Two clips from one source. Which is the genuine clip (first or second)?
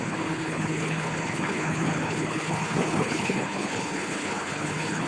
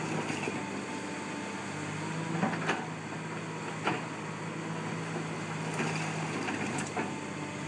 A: second